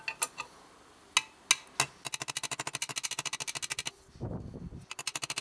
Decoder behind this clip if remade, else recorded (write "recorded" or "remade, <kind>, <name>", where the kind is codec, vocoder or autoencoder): recorded